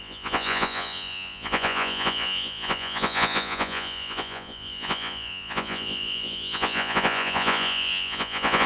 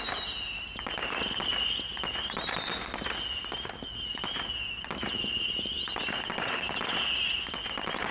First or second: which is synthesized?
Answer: first